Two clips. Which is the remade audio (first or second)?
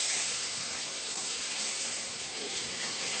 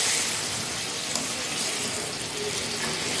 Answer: first